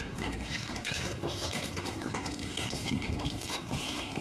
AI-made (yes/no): yes